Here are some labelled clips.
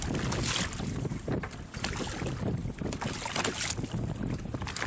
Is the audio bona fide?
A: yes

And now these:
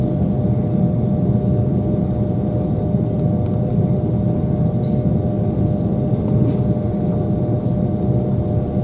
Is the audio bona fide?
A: yes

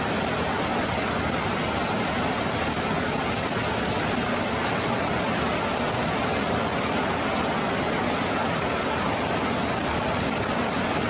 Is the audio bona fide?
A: yes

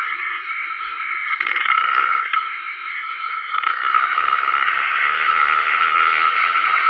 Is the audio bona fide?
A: no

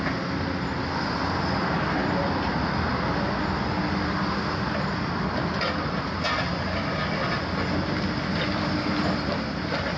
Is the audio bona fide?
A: yes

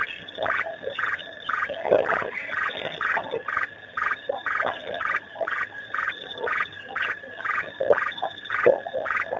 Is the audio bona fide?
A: no